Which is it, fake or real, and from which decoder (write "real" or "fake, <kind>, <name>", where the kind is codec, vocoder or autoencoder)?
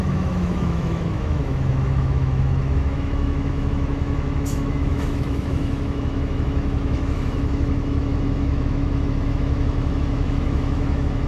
fake, autoencoder, DAC-VAE